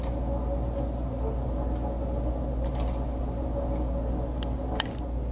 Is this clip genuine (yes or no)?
yes